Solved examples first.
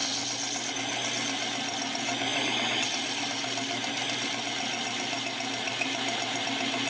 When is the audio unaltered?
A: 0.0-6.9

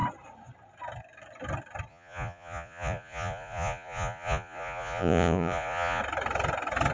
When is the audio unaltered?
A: 0.0-1.9; 6.0-6.9